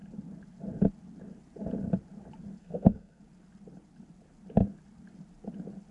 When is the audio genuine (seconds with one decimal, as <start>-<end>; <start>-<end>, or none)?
0.0-2.6; 3.2-5.9